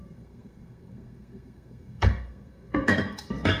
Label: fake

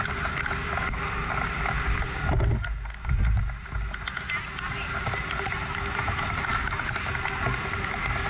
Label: real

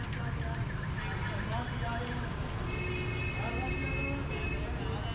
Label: real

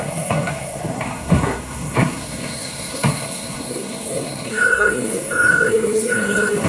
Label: fake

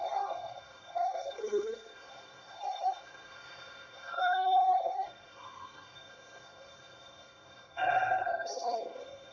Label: fake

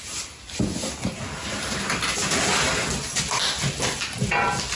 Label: real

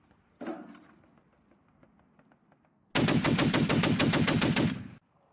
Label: real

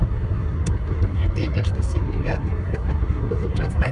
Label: fake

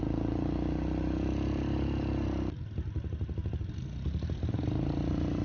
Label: real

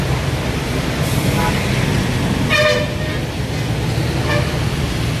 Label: real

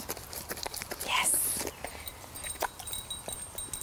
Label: real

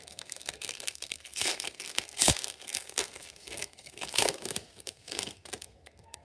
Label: fake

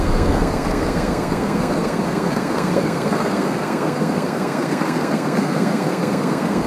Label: fake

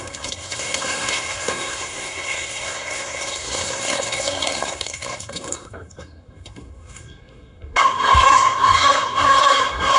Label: fake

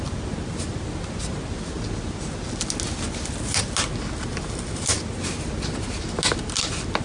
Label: real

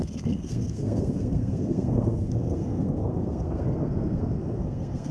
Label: fake